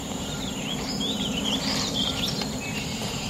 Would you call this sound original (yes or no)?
no